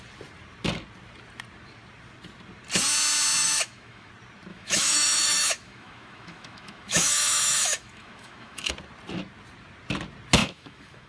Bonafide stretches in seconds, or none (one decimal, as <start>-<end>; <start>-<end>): 0.0-3.4; 4.1-4.5; 8.7-10.4

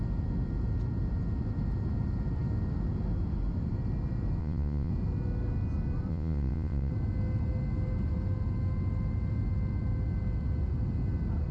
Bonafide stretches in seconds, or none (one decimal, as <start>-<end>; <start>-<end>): 0.0-4.4; 4.9-6.1; 6.9-11.5